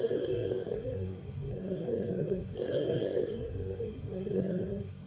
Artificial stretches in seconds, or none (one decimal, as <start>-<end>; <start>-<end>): 0.0-5.1

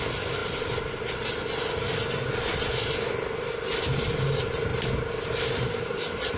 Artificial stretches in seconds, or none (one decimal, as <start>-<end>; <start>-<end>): none

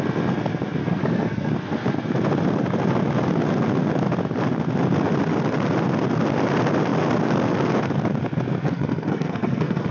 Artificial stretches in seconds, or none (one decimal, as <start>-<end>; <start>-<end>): 0.8-1.5; 8.6-9.9